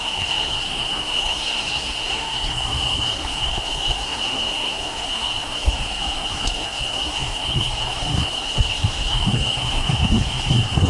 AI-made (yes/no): yes